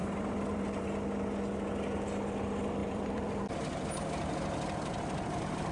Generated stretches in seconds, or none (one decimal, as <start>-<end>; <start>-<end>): 0.0-0.8; 2.8-3.5